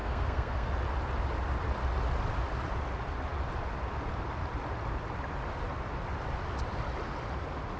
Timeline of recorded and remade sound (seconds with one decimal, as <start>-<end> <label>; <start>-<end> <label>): 0.0-0.7 remade; 0.7-7.8 recorded